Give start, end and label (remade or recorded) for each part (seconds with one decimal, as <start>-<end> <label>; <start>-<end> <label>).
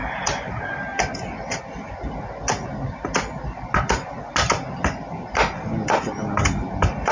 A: 0.0-7.1 recorded